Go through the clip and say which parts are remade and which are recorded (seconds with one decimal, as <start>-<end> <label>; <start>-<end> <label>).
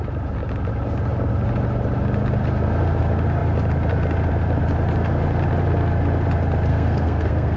0.0-6.7 recorded; 6.7-7.6 remade